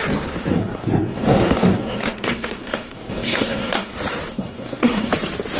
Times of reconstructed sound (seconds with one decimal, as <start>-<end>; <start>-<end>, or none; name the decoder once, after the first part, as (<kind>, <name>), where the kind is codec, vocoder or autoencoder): 0.5-3.9 (codec, SNAC); 4.3-5.1